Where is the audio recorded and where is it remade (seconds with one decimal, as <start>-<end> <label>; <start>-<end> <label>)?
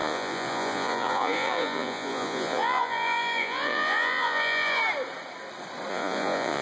0.0-4.8 remade; 4.8-5.9 recorded; 5.9-6.6 remade